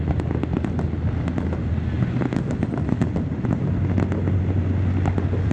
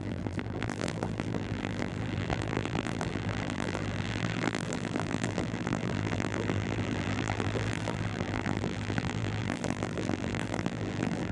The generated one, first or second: second